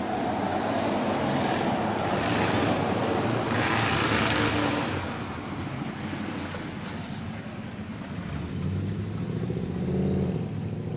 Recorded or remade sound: recorded